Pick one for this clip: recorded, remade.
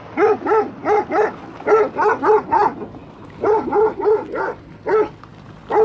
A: recorded